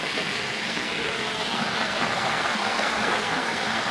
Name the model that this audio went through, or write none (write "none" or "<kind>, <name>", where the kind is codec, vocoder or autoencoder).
codec, SNAC